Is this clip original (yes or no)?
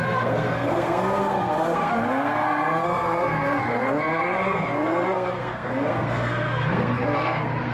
no